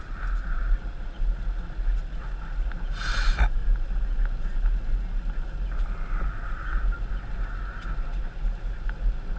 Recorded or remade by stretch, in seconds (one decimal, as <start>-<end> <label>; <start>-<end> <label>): 0.0-9.4 recorded